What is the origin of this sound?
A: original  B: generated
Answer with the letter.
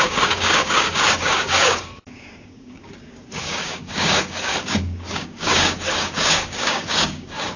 B